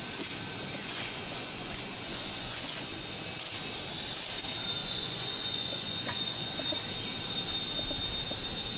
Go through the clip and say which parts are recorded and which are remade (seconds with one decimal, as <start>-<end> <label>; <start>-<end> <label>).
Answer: 0.0-0.8 recorded; 0.8-3.1 remade; 3.1-4.8 recorded; 4.8-6.5 remade; 6.5-8.8 recorded